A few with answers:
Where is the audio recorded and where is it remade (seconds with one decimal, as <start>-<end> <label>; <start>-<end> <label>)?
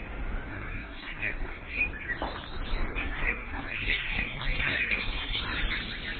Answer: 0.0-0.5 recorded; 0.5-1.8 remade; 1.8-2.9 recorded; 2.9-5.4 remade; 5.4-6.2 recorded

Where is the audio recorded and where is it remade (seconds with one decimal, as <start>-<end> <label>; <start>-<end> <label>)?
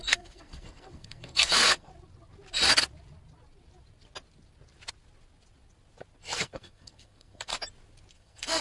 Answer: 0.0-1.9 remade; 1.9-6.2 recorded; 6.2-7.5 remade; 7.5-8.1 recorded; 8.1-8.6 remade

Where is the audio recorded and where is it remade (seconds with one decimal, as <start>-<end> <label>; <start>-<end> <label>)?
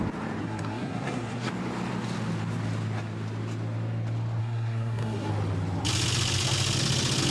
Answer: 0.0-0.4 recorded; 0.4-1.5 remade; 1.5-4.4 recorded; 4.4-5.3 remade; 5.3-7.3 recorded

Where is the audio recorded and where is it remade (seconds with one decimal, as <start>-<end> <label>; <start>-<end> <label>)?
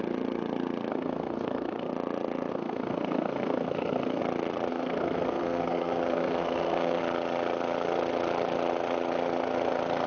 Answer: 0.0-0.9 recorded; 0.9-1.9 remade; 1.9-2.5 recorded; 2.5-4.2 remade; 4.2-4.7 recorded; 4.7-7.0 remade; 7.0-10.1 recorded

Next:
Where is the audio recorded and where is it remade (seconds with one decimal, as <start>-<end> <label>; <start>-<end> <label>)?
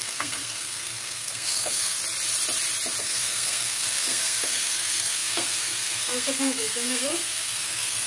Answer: 0.0-2.0 remade; 2.0-3.0 recorded; 3.0-8.1 remade